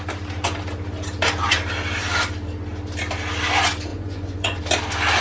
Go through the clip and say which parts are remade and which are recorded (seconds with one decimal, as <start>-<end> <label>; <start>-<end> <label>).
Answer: 0.0-3.9 recorded; 3.9-4.6 remade; 4.6-5.2 recorded